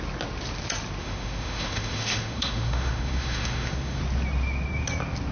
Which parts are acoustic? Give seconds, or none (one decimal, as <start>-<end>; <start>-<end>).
0.0-1.0; 4.0-5.3